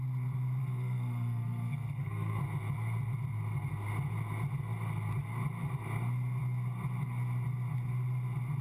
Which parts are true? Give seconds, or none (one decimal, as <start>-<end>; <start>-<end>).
0.0-0.6; 2.4-8.6